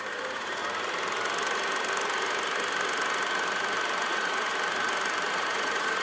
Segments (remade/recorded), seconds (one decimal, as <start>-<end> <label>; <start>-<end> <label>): 0.0-0.6 remade; 0.6-4.1 recorded; 4.1-4.5 remade; 4.5-5.3 recorded; 5.3-6.0 remade